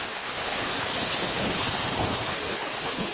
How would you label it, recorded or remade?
remade